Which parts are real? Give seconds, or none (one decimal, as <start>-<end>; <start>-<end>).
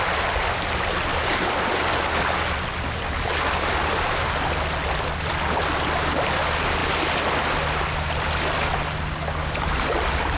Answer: 0.0-10.4